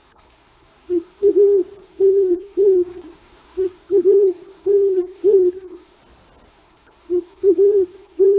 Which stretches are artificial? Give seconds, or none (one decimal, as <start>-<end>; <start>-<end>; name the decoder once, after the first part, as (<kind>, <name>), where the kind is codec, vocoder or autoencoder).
0.0-1.3 (codec, SNAC); 1.8-6.0; 6.5-8.4